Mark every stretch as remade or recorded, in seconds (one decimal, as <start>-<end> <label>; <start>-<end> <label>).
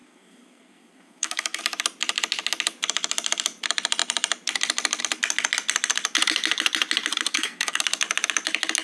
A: 0.0-1.6 remade; 1.6-7.3 recorded; 7.3-7.8 remade; 7.8-8.8 recorded